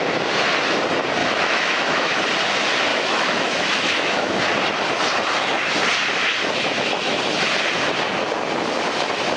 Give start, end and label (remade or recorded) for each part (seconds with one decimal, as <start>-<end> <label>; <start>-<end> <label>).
0.0-1.2 recorded; 1.2-2.1 remade; 2.1-2.9 recorded; 2.9-4.4 remade; 4.4-9.4 recorded